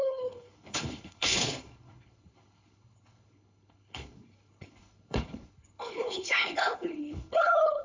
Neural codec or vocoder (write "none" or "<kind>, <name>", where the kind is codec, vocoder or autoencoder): codec, HILCodec